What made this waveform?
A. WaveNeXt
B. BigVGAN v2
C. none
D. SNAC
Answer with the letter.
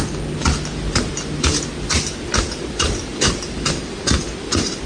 C